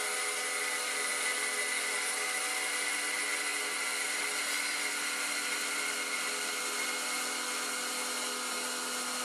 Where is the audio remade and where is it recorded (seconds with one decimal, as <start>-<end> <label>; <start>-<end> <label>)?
0.0-9.2 recorded